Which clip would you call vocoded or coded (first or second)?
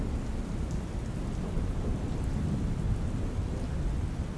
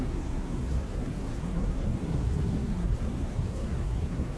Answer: second